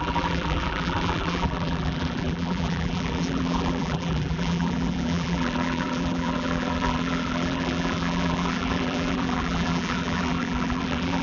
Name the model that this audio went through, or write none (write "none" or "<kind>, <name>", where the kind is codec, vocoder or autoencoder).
vocoder, BigVGAN v2